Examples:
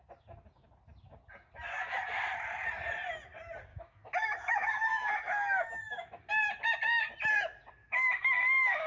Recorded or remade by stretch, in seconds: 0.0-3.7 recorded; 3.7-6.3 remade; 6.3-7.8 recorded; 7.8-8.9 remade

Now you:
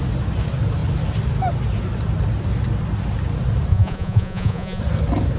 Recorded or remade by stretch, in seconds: 0.0-3.7 recorded; 3.7-4.8 remade; 4.8-5.4 recorded

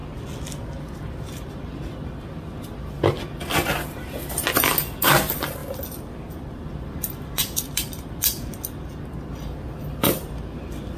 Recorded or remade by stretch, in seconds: 0.0-11.0 recorded